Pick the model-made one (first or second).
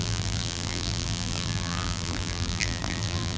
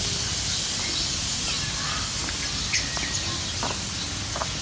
first